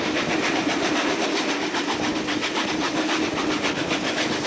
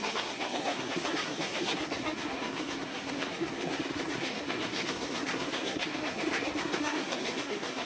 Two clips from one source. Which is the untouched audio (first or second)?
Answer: first